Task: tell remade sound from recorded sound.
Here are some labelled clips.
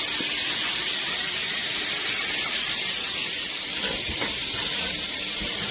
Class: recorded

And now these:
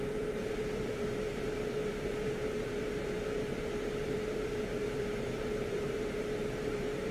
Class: remade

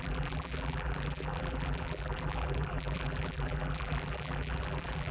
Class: remade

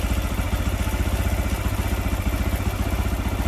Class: recorded